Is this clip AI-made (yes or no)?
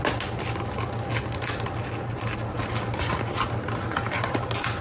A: no